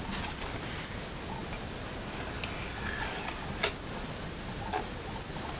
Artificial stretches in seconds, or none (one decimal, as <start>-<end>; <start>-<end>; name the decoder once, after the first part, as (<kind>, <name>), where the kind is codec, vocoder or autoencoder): none